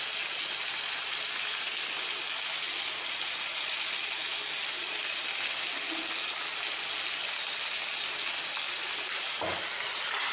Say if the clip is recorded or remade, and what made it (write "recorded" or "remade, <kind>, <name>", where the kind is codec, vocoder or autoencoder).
recorded